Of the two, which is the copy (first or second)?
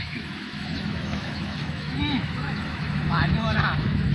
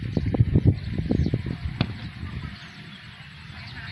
first